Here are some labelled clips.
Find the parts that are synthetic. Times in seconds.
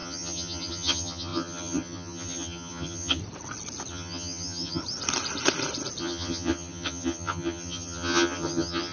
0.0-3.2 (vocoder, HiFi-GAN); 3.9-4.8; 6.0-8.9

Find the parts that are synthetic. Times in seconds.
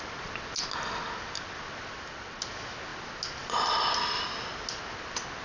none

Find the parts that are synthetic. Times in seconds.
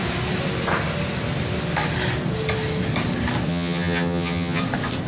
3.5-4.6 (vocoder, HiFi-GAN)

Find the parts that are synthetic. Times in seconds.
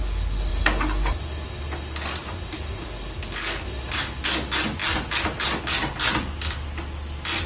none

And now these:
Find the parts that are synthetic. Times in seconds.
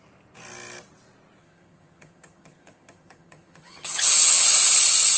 1.4-4.5 (vocoder, HiFi-GAN)